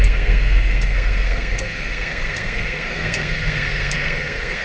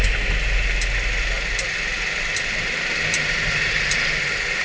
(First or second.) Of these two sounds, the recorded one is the second